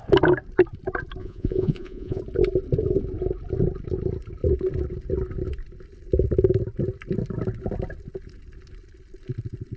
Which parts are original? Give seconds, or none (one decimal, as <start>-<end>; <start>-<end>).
0.0-1.2; 2.2-9.8